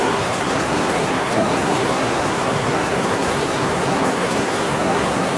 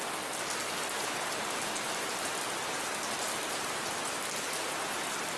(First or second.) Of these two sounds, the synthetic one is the first